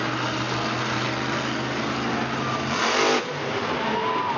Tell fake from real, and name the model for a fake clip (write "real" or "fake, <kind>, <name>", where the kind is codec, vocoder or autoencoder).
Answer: real